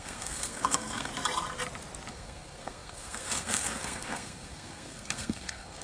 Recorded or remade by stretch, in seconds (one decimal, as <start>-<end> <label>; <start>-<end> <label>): 0.0-1.1 remade; 1.1-2.1 recorded; 2.1-5.8 remade